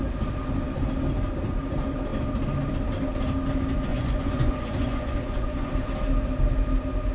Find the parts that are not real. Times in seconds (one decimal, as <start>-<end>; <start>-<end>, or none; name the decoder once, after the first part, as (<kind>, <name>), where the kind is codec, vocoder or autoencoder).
3.9-5.7 (vocoder, Vocos)